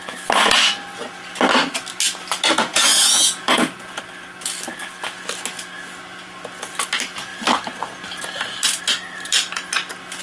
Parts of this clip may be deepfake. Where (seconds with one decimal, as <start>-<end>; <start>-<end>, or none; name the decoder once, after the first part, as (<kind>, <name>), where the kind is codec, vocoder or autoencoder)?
2.7-4.0 (vocoder, Vocos)